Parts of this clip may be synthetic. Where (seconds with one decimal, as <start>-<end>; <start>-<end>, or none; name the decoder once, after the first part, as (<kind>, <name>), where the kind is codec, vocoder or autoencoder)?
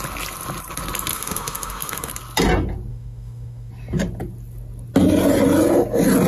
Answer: 1.1-2.1 (autoencoder, DAC-VAE); 2.9-3.7